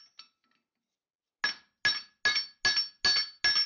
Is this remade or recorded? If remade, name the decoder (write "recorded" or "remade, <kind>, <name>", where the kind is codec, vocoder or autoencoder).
recorded